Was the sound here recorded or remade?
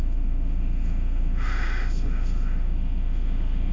remade